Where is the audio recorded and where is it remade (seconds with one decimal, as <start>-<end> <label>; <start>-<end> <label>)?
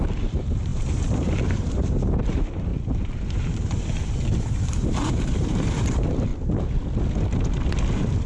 0.0-2.7 remade; 2.7-3.3 recorded; 3.3-6.3 remade; 6.3-7.9 recorded; 7.9-8.3 remade